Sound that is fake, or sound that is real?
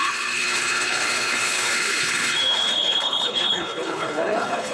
fake